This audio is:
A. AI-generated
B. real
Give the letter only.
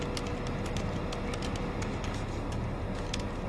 B